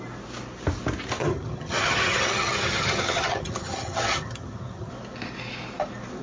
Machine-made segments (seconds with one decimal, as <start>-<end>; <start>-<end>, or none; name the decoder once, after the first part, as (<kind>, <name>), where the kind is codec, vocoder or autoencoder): 1.2-4.9 (vocoder, HiFi-GAN)